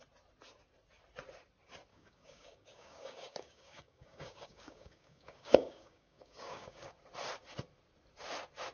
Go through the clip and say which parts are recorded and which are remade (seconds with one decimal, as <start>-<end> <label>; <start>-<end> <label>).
0.0-1.9 recorded; 1.9-6.9 remade; 6.9-8.7 recorded